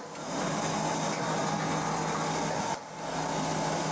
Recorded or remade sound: recorded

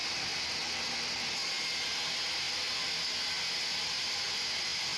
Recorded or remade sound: recorded